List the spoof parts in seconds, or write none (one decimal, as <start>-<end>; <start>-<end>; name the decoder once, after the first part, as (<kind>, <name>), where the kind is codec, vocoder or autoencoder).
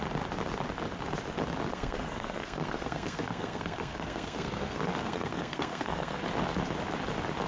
1.7-6.2 (codec, SNAC)